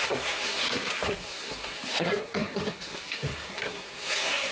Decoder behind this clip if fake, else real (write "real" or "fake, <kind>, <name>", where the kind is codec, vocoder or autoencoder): fake, codec, SNAC